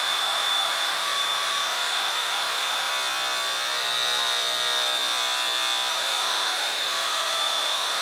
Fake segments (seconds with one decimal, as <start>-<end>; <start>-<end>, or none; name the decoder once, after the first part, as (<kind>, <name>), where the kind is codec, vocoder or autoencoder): 0.0-2.9 (autoencoder, DAC-VAE); 5.9-8.0

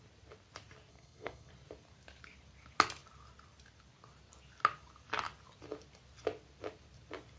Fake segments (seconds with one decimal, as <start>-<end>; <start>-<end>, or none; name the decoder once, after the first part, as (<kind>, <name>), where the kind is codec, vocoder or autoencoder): 0.9-1.5 (codec, SNAC)